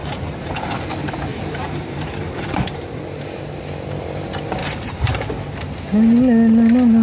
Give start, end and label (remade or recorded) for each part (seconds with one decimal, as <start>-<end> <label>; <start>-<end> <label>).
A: 0.0-0.6 remade; 0.6-1.3 recorded; 1.3-3.0 remade; 3.0-4.6 recorded; 4.6-5.3 remade; 5.3-7.0 recorded